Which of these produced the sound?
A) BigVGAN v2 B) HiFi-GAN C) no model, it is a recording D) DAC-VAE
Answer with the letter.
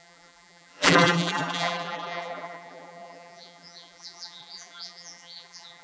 A